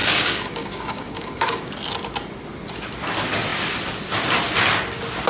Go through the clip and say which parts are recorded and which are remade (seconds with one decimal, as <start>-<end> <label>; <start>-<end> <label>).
0.0-1.7 remade; 1.7-5.3 recorded